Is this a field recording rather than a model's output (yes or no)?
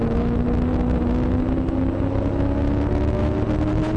yes